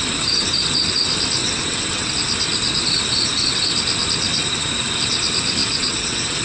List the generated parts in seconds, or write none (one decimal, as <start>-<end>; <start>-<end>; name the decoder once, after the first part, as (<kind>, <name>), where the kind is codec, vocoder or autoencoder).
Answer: 1.4-2.1 (vocoder, WaveNeXt); 5.6-6.4